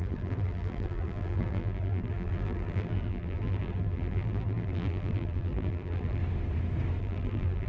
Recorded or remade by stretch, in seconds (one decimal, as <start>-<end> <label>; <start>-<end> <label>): 0.0-6.2 remade; 6.2-7.0 recorded; 7.0-7.7 remade